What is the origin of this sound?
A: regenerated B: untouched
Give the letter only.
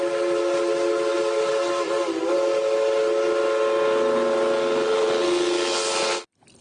B